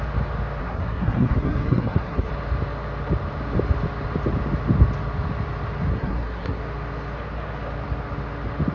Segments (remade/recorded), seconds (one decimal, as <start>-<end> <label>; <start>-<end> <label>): 0.0-0.6 recorded; 0.6-2.3 remade; 2.3-5.9 recorded; 5.9-6.6 remade; 6.6-8.7 recorded